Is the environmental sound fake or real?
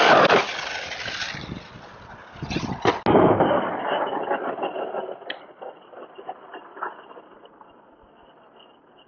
real